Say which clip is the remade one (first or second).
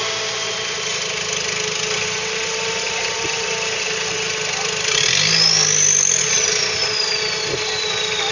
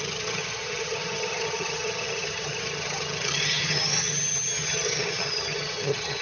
second